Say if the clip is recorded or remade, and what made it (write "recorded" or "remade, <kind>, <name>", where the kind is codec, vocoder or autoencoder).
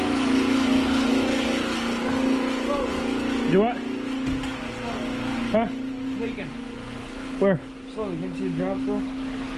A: recorded